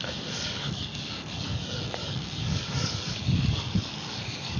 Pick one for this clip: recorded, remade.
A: remade